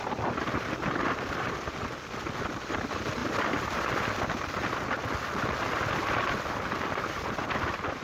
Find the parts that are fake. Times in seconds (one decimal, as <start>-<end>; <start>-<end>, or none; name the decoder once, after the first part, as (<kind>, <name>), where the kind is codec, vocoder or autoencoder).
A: 3.2-3.8 (vocoder, BigVGAN v2)